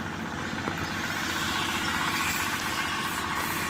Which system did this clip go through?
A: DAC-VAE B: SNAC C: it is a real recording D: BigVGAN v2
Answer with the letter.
C